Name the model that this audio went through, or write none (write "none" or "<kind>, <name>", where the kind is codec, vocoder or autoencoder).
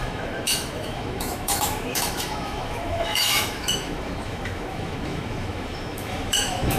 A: autoencoder, DAC-VAE